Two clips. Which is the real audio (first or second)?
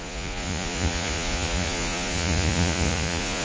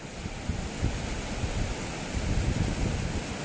second